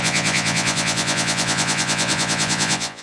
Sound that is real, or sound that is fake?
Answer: fake